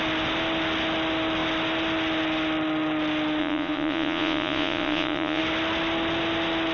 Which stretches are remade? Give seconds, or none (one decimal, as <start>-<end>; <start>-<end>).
3.4-5.4